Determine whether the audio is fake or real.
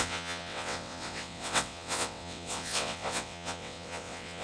fake